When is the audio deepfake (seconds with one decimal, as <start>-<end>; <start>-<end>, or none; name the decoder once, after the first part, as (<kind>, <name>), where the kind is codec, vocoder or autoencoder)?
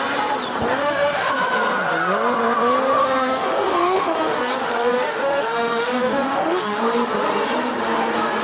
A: 0.8-1.3 (autoencoder, DAC-VAE); 3.0-4.4; 4.9-6.8